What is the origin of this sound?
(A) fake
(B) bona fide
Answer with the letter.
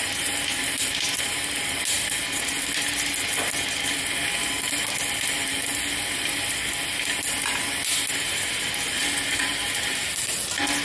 B